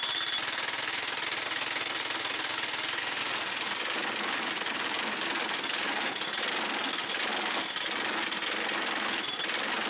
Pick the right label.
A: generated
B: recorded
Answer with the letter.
B